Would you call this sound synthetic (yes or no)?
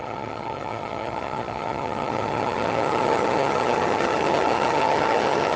yes